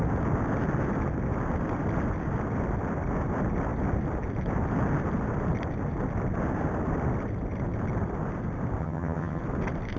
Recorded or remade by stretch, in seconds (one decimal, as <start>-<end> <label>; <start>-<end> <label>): 0.0-8.8 recorded; 8.8-9.4 remade; 9.4-10.0 recorded

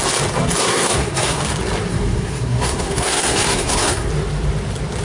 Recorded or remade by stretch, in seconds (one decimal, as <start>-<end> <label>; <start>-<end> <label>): 0.0-0.6 recorded; 0.6-1.4 remade; 1.4-1.9 recorded; 1.9-4.1 remade; 4.1-5.0 recorded

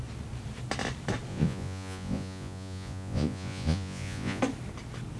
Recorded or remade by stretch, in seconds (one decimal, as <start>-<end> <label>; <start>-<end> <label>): 0.0-1.3 recorded; 1.3-4.4 remade; 4.4-5.2 recorded

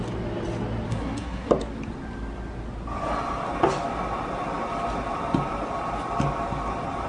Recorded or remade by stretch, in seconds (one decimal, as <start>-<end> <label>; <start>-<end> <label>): 0.0-0.9 recorded; 0.9-1.5 remade; 1.5-7.1 recorded

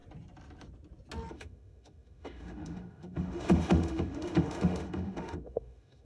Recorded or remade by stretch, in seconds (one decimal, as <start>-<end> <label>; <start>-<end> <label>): 0.0-1.3 recorded; 1.3-6.0 remade

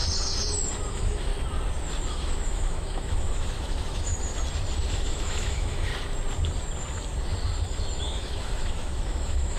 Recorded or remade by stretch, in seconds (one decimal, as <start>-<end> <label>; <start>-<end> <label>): 0.0-0.9 recorded; 0.9-1.3 remade; 1.3-2.1 recorded; 2.1-4.1 remade; 4.1-4.9 recorded; 4.9-5.9 remade; 5.9-8.0 recorded; 8.0-9.6 remade